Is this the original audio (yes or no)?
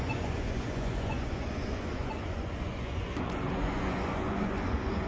no